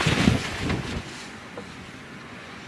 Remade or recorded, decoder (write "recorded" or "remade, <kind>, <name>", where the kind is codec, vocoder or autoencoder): remade, vocoder, Vocos